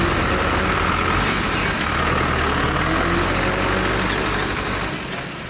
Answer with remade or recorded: recorded